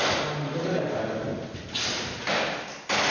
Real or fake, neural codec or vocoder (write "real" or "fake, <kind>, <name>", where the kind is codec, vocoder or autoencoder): real